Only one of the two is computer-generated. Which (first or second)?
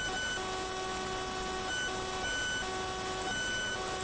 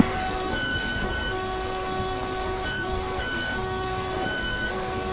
second